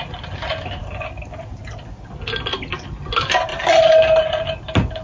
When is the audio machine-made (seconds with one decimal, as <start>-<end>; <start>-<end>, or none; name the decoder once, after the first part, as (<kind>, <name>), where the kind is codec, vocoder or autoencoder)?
none